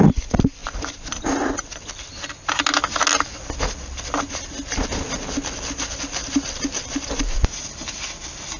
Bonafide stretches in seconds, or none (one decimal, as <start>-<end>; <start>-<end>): 0.0-8.6

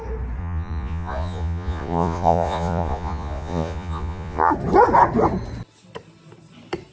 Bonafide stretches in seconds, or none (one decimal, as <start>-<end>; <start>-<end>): 0.0-0.4; 4.5-6.9

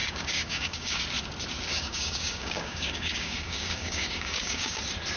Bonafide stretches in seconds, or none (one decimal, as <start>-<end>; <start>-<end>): 1.0-1.7; 4.8-5.2

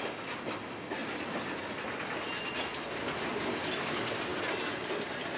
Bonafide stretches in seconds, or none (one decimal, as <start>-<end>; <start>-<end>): 0.0-2.7; 3.3-5.4

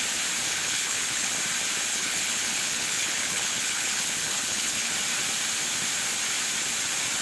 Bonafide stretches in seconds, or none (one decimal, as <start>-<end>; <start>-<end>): 0.0-0.5; 1.3-1.9; 4.9-7.2